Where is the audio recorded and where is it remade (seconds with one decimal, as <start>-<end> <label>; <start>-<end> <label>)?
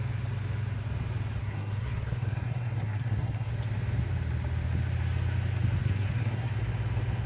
0.0-1.4 recorded; 1.4-3.5 remade; 3.5-5.8 recorded; 5.8-6.5 remade; 6.5-7.3 recorded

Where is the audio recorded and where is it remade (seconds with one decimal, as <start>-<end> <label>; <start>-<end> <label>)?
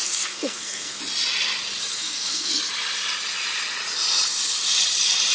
0.0-1.0 remade; 1.0-1.9 recorded; 1.9-2.5 remade; 2.5-5.3 recorded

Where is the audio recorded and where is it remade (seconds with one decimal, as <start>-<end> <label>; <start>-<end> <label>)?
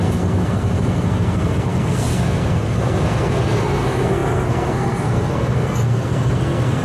0.0-6.8 remade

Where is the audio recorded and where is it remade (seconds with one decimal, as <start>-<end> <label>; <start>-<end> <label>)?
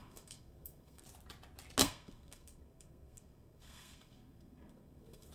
0.0-1.0 remade; 1.0-1.8 recorded; 1.8-5.3 remade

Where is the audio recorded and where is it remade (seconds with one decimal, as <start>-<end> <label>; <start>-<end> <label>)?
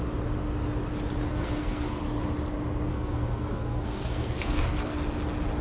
0.0-1.3 recorded; 1.3-2.0 remade; 2.0-2.9 recorded; 2.9-5.0 remade; 5.0-5.6 recorded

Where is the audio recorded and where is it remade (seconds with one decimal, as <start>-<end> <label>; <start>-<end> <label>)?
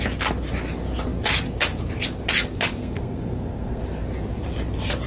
0.0-2.8 recorded; 2.8-3.8 remade; 3.8-5.1 recorded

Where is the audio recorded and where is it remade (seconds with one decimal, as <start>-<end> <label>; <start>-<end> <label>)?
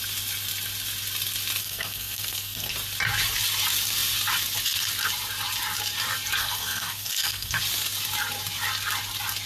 0.0-1.6 recorded; 1.6-2.7 remade; 2.7-6.4 recorded; 6.4-7.6 remade; 7.6-9.5 recorded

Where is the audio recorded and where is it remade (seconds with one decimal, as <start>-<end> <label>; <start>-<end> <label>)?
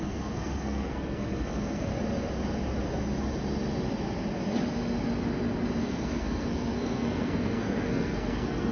0.0-1.9 remade; 1.9-5.8 recorded; 5.8-8.7 remade